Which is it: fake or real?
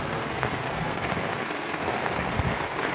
fake